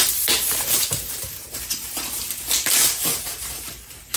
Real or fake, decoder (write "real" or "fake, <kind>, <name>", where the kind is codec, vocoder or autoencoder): fake, vocoder, BigVGAN v2